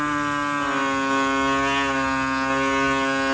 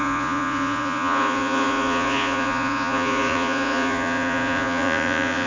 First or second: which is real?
first